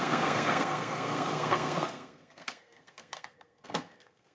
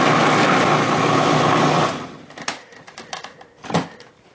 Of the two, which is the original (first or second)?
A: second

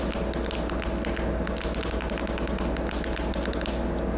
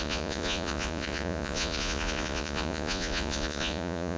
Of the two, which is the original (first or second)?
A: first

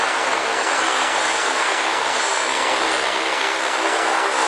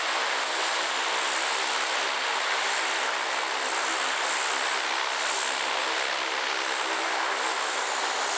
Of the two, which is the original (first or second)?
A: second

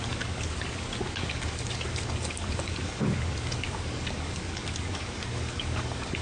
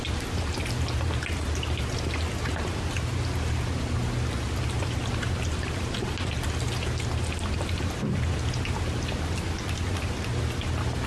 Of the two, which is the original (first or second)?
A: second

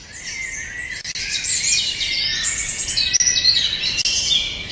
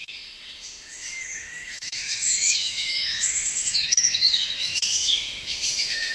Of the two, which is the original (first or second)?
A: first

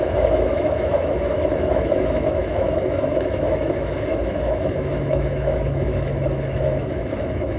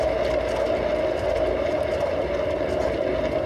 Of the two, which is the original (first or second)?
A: second